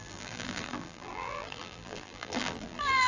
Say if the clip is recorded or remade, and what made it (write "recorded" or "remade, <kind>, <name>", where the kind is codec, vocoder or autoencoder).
remade, vocoder, BigVGAN v2